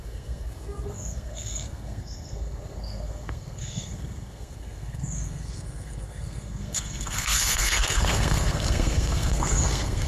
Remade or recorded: remade